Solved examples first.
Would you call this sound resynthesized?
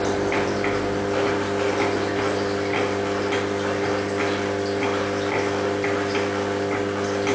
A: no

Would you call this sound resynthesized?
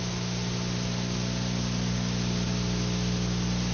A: no